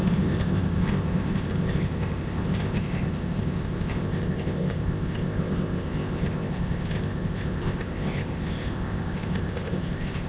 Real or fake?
fake